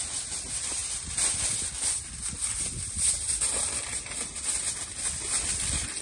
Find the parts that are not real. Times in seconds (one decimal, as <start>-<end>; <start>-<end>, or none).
none